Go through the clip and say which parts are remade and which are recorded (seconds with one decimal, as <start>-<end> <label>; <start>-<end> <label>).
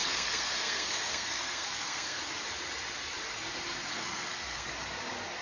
0.0-2.2 remade; 2.2-3.9 recorded; 3.9-4.7 remade; 4.7-5.4 recorded